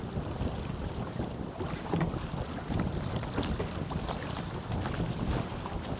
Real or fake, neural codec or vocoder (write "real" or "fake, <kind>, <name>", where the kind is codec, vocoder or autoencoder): real